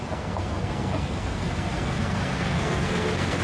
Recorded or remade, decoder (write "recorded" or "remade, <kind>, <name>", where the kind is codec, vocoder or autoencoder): remade, codec, SNAC